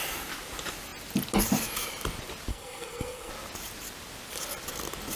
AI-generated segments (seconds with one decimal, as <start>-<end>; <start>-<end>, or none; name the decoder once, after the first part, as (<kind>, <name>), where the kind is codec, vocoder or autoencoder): 2.5-3.3 (codec, SNAC)